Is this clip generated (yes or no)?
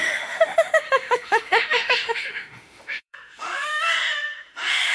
yes